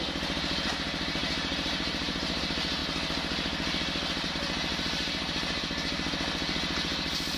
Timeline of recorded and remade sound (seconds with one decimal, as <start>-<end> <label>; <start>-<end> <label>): 0.0-1.2 recorded; 1.2-2.4 remade; 2.4-4.7 recorded; 4.7-5.6 remade; 5.6-7.4 recorded